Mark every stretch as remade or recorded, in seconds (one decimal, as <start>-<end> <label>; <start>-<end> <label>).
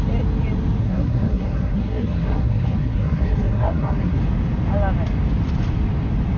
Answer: 0.0-0.8 recorded; 0.8-4.2 remade; 4.2-6.4 recorded